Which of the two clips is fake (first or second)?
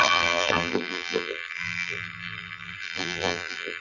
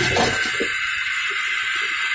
first